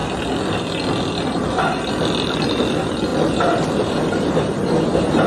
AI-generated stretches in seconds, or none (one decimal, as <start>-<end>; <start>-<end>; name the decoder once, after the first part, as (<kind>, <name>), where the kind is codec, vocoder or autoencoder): none